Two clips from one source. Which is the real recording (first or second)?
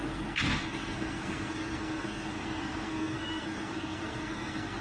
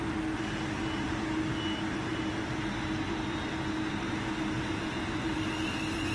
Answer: second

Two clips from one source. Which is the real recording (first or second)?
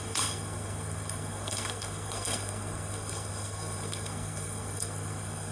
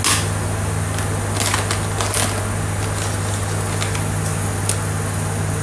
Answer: second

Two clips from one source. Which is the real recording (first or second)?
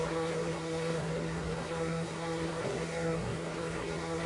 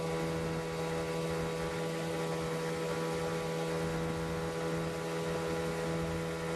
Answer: second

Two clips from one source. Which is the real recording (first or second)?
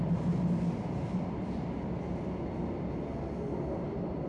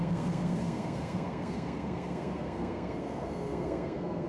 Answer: first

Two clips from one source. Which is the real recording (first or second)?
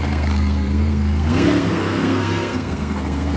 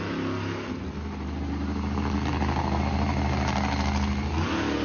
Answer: second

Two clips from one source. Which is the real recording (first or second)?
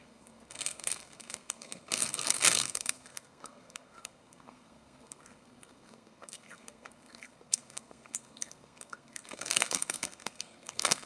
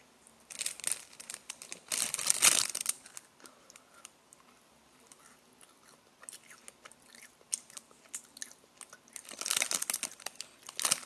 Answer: second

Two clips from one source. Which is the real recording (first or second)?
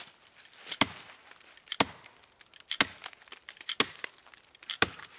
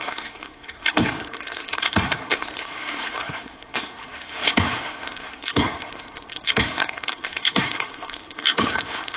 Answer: first